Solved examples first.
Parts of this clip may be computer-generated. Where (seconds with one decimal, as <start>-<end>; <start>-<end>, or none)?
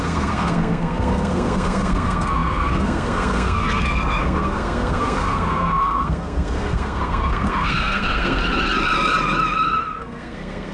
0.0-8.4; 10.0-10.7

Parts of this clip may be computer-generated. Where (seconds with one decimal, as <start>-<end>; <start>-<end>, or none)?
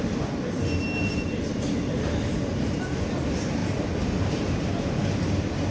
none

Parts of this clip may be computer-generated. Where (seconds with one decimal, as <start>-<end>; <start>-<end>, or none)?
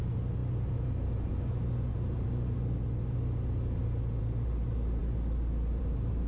none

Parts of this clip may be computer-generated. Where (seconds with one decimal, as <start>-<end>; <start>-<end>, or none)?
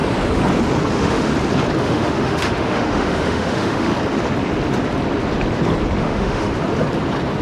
0.9-1.3; 1.8-3.9; 6.0-6.5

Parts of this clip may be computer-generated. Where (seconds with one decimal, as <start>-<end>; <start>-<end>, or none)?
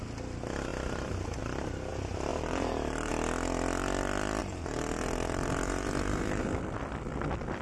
2.3-3.1; 4.4-6.6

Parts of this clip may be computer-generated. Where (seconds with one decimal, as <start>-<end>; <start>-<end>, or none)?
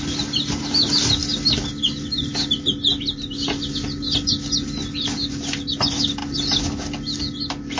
none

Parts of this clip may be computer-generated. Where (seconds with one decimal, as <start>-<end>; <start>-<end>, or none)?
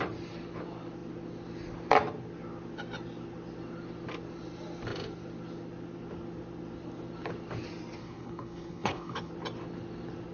8.0-9.3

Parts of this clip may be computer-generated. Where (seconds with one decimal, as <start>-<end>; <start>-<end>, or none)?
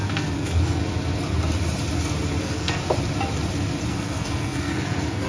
0.0-0.8; 2.4-2.8; 3.9-5.3